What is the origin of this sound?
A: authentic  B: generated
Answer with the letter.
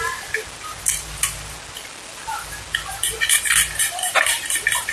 A